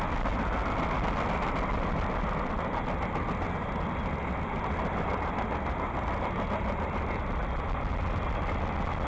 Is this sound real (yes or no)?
yes